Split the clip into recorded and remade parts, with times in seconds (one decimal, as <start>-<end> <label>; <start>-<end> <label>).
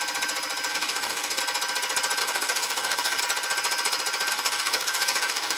0.0-0.7 recorded; 0.7-1.4 remade; 1.4-2.2 recorded; 2.2-3.2 remade; 3.2-4.3 recorded; 4.3-5.6 remade